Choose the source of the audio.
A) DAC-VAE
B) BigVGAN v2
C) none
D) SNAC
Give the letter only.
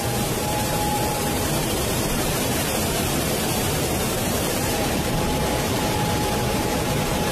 B